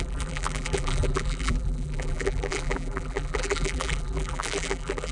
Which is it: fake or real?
fake